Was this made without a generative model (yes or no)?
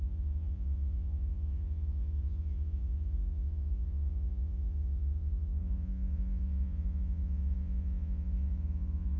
no